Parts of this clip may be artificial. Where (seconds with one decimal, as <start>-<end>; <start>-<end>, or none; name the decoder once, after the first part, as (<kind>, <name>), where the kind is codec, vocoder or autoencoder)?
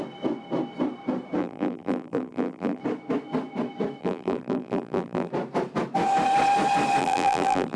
1.4-2.8 (vocoder, BigVGAN v2); 4.0-5.3; 7.0-7.8